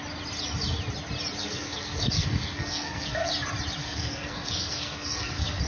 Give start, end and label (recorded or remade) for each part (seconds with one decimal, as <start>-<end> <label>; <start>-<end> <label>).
0.0-1.4 recorded; 1.4-3.3 remade; 3.3-3.8 recorded; 3.8-5.7 remade